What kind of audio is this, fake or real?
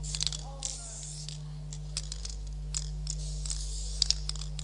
real